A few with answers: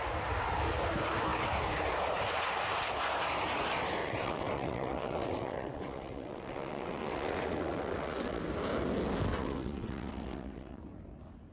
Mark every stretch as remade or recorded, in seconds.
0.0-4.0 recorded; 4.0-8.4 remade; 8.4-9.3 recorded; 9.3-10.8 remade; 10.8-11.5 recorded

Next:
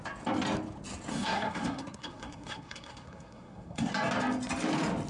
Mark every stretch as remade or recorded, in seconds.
0.0-1.1 recorded; 1.1-3.9 remade; 3.9-5.1 recorded

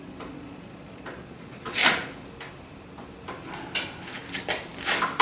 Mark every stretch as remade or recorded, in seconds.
0.0-1.8 remade; 1.8-5.2 recorded